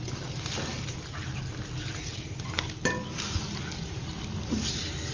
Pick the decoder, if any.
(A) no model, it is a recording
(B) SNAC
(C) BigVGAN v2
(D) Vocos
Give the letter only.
C